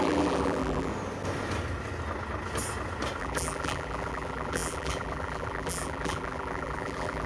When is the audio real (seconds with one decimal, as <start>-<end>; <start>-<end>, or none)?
0.9-3.2